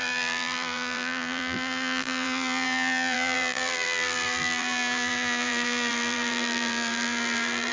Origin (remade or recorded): remade